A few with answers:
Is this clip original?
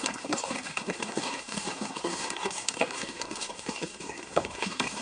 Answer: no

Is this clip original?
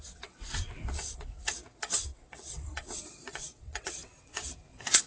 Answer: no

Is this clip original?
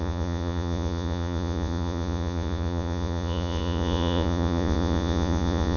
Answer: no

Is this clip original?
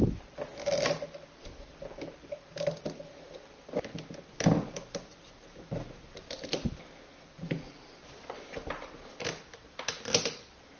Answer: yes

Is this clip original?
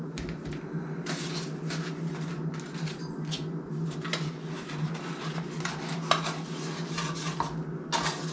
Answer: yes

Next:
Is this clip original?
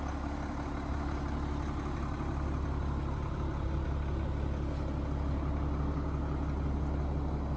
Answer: yes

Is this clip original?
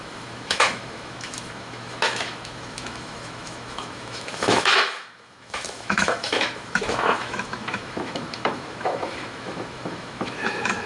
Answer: no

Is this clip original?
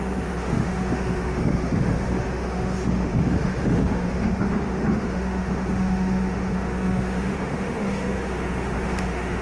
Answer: no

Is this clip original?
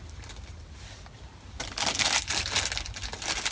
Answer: yes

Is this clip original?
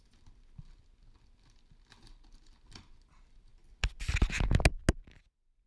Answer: yes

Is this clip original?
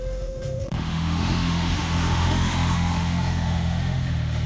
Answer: no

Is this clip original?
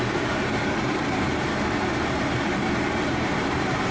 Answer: no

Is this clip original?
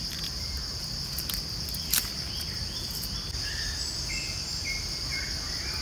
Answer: yes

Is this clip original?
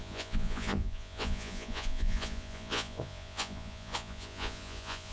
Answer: no